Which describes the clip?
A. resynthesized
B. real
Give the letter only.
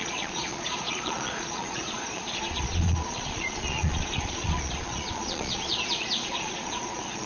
A